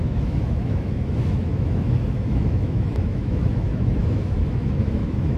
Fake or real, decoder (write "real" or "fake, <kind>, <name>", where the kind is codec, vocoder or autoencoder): fake, autoencoder, DAC-VAE